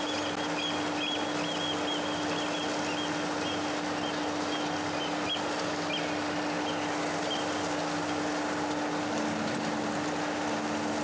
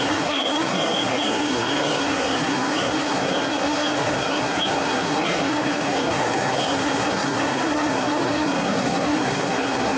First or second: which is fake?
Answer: second